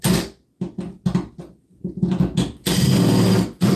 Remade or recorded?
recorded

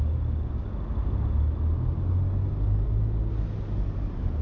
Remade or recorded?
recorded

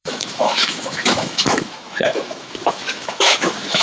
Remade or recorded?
remade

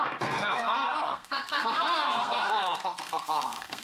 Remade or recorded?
remade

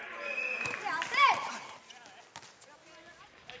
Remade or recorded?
recorded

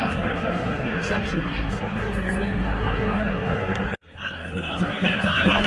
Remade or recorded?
remade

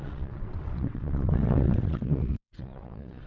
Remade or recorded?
remade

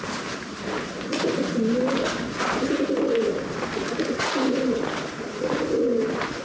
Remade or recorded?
recorded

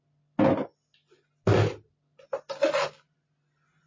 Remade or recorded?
recorded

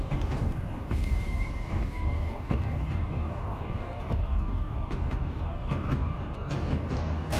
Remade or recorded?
remade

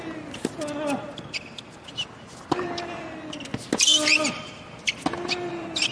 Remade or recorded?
recorded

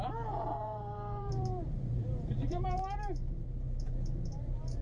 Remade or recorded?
remade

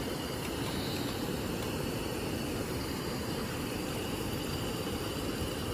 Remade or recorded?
remade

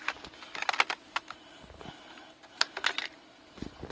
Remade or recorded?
recorded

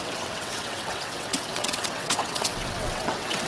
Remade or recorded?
remade